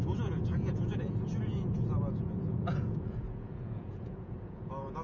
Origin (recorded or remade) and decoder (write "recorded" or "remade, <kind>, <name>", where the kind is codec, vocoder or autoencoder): remade, vocoder, Vocos